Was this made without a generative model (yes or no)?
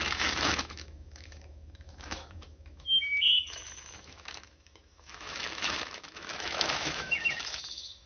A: no